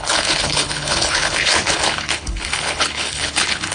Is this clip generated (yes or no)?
yes